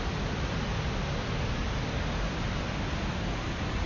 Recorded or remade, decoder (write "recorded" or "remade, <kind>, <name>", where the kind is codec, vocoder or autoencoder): recorded